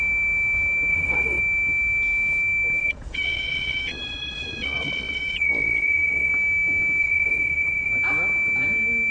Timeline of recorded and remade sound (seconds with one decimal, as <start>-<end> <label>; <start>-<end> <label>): 0.0-0.9 recorded; 0.9-1.4 remade; 1.4-2.8 recorded; 2.8-6.3 remade; 6.3-7.0 recorded; 7.0-7.9 remade; 7.9-9.1 recorded